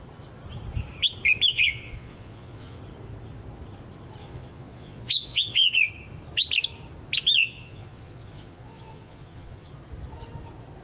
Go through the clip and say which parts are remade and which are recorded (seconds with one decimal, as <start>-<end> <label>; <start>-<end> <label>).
0.0-1.5 recorded; 1.5-2.8 remade; 2.8-4.2 recorded; 4.2-5.9 remade; 5.9-7.4 recorded; 7.4-9.7 remade; 9.7-10.8 recorded